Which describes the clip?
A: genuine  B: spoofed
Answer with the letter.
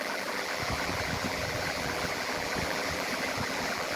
B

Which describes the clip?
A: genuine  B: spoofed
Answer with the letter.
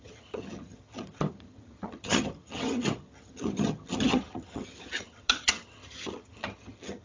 B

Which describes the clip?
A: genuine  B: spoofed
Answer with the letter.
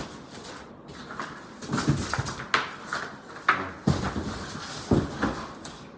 A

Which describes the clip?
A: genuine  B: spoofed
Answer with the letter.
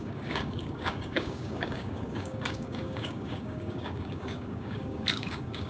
B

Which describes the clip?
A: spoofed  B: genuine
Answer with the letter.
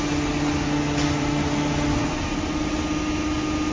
B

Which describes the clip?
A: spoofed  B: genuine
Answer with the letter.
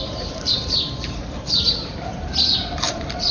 A